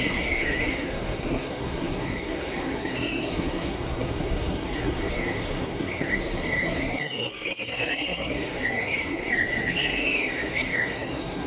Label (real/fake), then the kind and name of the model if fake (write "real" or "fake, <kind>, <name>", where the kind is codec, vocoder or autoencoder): fake, codec, SNAC